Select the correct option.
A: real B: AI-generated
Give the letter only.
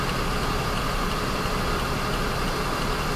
A